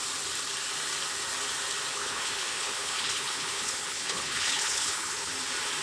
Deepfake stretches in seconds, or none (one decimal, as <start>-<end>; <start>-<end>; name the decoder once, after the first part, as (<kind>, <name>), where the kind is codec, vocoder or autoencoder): 1.9-5.3 (codec, HILCodec)